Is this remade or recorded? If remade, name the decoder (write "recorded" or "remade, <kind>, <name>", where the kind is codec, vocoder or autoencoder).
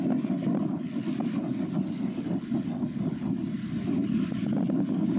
recorded